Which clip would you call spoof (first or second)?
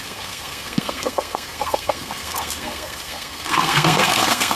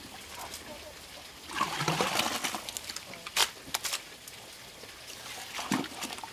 first